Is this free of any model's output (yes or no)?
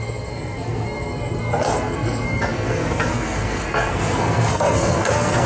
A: no